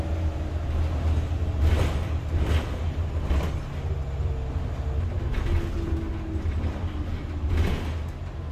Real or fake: real